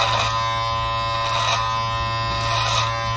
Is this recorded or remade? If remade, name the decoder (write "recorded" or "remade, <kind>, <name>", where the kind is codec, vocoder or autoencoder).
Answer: recorded